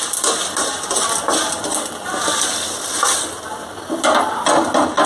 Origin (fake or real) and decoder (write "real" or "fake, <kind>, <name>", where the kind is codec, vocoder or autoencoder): real